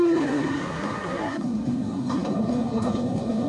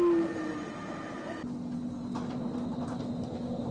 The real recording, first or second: second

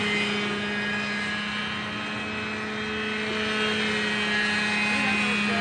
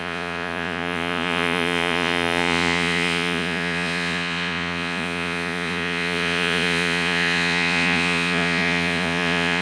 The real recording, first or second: first